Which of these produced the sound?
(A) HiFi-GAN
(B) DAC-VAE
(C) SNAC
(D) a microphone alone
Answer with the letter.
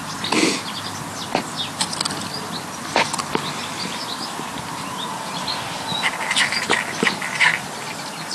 D